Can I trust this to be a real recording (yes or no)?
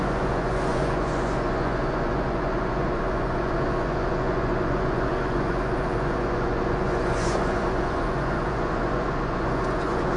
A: no